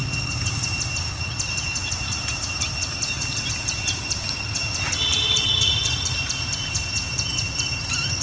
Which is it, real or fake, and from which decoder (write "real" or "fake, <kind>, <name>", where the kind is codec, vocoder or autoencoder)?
real